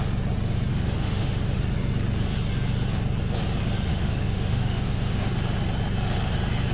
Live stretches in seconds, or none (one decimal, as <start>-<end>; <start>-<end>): 0.0-0.7; 1.6-3.9; 5.3-6.7